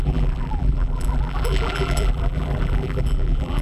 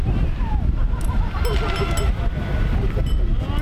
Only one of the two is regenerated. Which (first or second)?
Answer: first